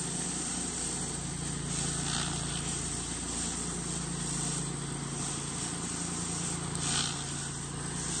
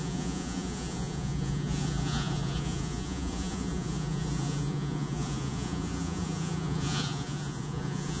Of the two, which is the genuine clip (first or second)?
first